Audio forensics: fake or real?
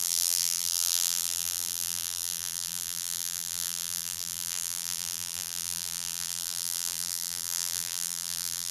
fake